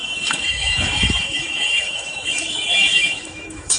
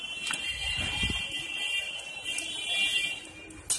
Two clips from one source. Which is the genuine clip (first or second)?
second